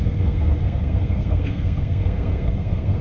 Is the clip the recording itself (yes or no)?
no